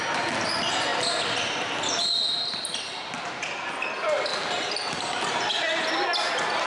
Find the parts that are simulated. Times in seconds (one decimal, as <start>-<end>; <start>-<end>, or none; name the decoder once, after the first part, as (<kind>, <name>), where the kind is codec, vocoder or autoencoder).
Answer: 4.3-5.5 (vocoder, BigVGAN v2)